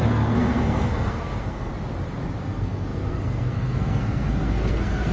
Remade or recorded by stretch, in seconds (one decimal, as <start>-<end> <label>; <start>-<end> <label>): 0.0-1.7 remade; 1.7-2.4 recorded; 2.4-5.1 remade